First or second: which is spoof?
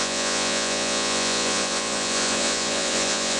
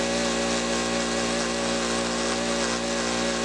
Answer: first